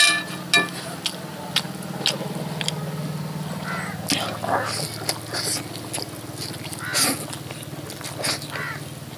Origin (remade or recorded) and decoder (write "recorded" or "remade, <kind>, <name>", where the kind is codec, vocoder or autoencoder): recorded